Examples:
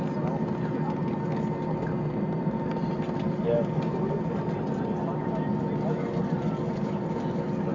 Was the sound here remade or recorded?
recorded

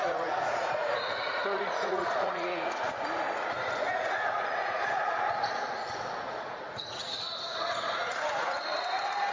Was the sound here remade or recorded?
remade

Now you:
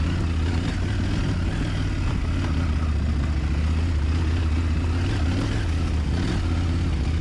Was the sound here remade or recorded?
recorded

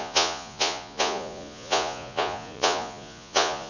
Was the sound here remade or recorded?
remade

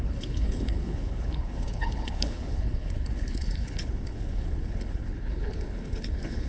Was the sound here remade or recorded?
remade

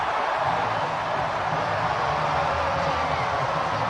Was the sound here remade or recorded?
remade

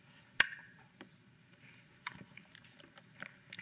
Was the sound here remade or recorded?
remade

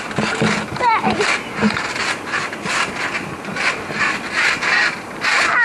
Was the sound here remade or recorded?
recorded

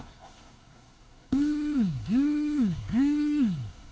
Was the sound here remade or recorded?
remade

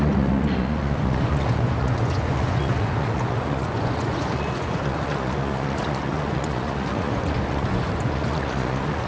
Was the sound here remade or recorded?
remade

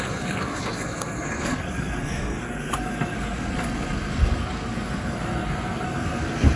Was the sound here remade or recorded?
remade